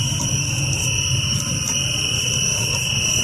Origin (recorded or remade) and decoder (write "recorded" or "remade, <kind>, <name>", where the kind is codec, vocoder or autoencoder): recorded